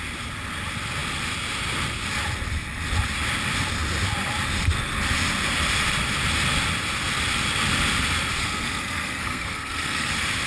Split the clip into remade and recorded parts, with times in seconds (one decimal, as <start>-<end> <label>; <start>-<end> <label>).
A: 0.0-8.4 recorded; 8.4-10.1 remade; 10.1-10.5 recorded